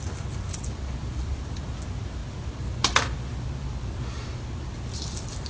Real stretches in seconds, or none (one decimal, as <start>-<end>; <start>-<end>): 0.0-5.5